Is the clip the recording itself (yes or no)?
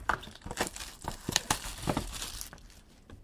no